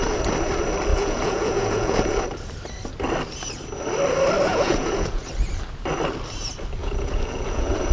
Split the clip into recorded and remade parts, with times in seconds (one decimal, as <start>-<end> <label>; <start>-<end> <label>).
0.0-0.9 recorded; 0.9-2.2 remade; 2.2-4.5 recorded; 4.5-5.2 remade; 5.2-6.8 recorded; 6.8-7.9 remade